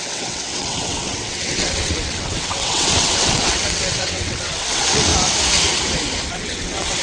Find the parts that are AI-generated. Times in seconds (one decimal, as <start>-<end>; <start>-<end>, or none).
0.0-5.1; 6.3-7.0